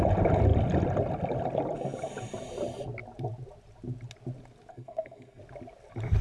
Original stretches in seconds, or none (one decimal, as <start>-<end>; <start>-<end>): 0.0-4.7; 5.4-6.2